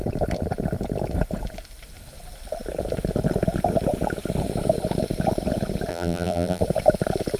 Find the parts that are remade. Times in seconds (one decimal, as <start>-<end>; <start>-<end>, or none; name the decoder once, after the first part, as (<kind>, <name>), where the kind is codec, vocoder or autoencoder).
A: 5.9-6.6 (vocoder, BigVGAN v2)